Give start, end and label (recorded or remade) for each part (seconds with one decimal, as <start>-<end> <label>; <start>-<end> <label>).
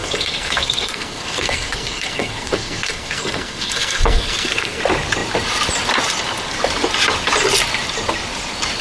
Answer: 0.0-4.8 remade; 4.8-8.8 recorded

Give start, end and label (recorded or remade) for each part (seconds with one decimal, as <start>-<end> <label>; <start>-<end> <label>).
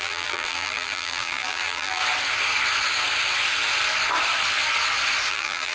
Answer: 0.0-2.0 remade; 2.0-5.3 recorded; 5.3-5.7 remade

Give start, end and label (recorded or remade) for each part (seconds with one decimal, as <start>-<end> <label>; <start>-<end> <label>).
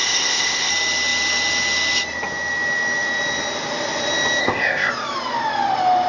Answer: 0.0-0.7 remade; 0.7-4.4 recorded; 4.4-4.9 remade; 4.9-6.1 recorded